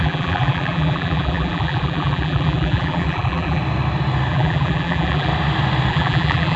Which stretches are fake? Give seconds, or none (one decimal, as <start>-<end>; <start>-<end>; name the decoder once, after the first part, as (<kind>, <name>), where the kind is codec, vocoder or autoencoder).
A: 0.0-3.6 (vocoder, BigVGAN v2); 4.3-5.3; 5.9-6.6

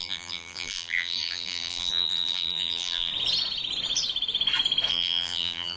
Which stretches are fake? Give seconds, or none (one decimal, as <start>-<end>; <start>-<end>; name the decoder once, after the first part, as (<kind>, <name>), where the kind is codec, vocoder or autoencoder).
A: 0.0-3.1 (vocoder, BigVGAN v2); 4.9-5.8

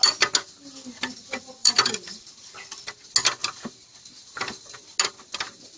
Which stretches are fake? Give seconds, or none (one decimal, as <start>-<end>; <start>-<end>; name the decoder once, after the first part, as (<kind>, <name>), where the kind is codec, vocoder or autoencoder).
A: 1.6-2.8 (vocoder, BigVGAN v2)

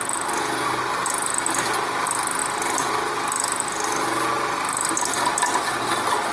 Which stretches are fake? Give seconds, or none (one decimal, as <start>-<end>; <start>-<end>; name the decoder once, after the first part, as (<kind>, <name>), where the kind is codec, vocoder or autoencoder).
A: none

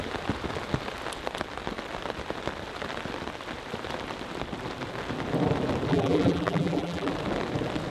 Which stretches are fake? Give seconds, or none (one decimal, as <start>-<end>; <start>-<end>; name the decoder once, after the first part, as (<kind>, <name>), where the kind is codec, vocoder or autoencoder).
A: 5.9-7.1 (vocoder, BigVGAN v2)

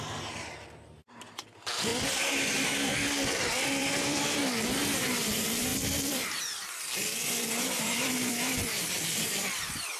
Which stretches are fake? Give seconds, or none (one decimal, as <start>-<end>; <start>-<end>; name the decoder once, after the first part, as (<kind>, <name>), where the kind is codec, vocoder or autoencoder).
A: 0.0-1.9 (vocoder, BigVGAN v2); 2.5-7.1; 7.8-10.0

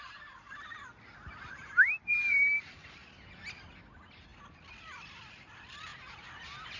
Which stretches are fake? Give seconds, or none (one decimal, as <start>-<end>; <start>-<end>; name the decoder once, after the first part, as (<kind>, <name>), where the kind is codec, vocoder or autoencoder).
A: 0.0-3.0 (vocoder, BigVGAN v2); 3.8-4.3; 5.1-5.9

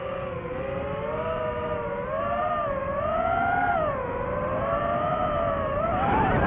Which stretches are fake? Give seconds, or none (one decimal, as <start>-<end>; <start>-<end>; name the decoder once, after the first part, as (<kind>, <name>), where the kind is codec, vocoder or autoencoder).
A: 0.0-3.3 (vocoder, BigVGAN v2); 4.3-6.5